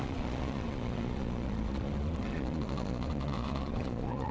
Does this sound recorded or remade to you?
remade